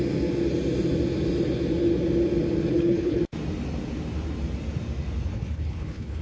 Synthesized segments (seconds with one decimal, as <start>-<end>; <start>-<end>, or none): 2.7-3.2; 5.3-6.2